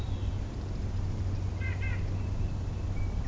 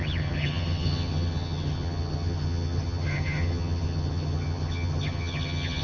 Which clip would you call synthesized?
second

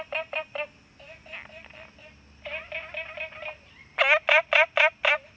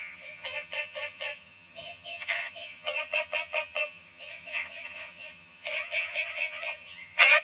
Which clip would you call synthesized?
second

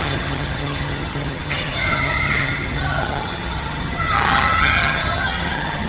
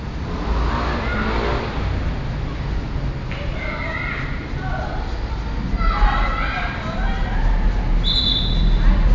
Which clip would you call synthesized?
first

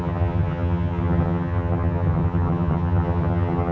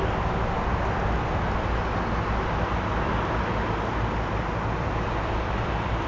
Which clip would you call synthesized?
first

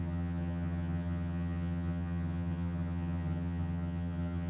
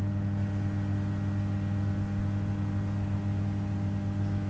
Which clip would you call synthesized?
first